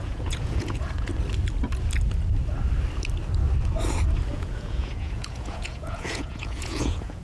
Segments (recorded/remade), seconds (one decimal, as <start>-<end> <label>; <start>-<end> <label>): 0.0-1.1 remade; 1.1-4.3 recorded; 4.3-7.2 remade